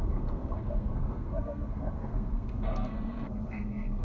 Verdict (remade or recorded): remade